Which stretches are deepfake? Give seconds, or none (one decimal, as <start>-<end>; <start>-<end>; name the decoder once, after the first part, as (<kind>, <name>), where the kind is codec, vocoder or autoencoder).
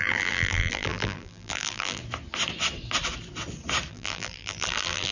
0.0-2.0 (vocoder, BigVGAN v2); 3.9-5.1